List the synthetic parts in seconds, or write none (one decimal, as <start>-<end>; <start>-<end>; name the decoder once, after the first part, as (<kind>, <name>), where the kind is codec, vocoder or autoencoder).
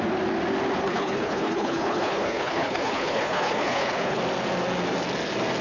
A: 0.8-4.2 (codec, HILCodec)